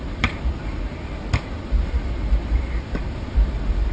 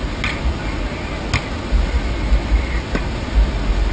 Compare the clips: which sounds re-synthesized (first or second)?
first